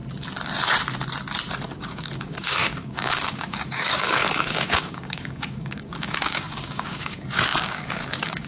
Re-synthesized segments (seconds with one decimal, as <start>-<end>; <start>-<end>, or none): 1.8-8.5